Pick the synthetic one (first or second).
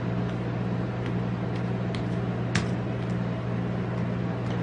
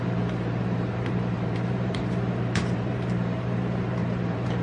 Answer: second